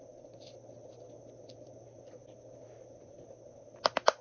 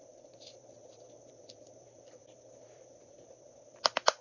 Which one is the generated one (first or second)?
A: second